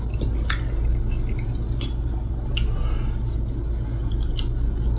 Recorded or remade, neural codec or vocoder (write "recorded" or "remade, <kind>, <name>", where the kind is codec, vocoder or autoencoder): recorded